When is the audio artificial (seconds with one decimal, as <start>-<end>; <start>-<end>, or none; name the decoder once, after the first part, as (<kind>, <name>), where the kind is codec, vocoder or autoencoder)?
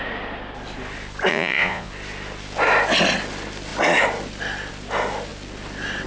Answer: 1.3-1.9 (vocoder, Vocos)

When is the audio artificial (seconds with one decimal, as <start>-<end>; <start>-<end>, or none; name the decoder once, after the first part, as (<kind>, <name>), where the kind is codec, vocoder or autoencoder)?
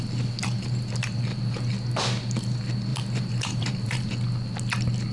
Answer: 0.4-1.7 (vocoder, BigVGAN v2); 2.9-4.1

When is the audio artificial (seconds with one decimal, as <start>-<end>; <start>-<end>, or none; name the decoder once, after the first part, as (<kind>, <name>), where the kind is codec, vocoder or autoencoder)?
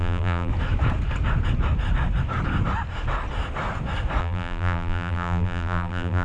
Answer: 0.0-0.5 (vocoder, BigVGAN v2); 4.2-6.2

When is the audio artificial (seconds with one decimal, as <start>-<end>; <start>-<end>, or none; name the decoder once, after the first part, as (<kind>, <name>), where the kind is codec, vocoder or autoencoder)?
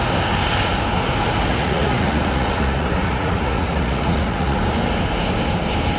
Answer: 1.5-4.6 (vocoder, Vocos)